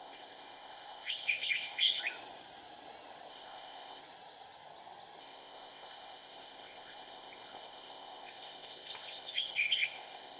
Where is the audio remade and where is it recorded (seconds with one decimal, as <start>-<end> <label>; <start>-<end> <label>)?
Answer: 0.0-2.0 remade; 2.0-3.3 recorded; 3.3-4.0 remade; 4.0-5.2 recorded; 5.2-10.4 remade